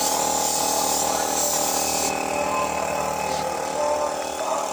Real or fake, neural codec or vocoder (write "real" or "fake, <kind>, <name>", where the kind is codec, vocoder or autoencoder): real